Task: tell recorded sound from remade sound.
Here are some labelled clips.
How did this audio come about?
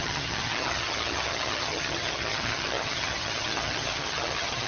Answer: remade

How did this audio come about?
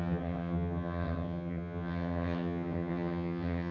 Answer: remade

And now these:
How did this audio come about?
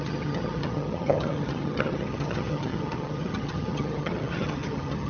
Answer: remade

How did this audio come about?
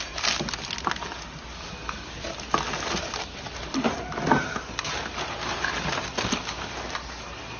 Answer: recorded